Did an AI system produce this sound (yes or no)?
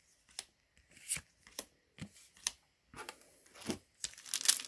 no